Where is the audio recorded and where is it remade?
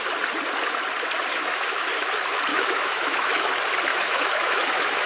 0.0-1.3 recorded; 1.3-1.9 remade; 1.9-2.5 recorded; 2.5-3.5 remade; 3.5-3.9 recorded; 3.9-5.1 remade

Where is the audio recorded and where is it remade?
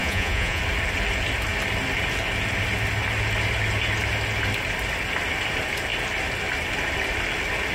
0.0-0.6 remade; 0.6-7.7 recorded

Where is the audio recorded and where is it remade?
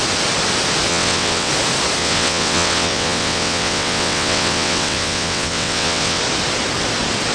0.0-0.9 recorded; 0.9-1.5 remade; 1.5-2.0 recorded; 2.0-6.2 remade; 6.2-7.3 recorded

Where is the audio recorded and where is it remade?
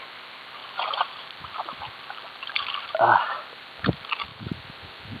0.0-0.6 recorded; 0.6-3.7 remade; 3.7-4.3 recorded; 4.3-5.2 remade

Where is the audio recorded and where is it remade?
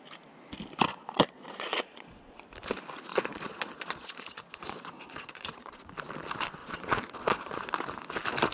0.0-0.9 recorded; 0.9-2.4 remade; 2.4-3.1 recorded; 3.1-5.9 remade; 5.9-6.6 recorded; 6.6-7.7 remade; 7.7-8.5 recorded